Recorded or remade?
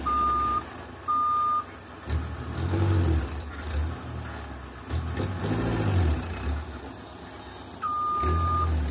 recorded